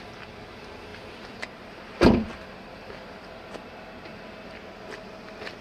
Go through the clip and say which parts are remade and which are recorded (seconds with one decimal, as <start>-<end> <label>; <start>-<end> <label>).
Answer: 0.0-5.6 recorded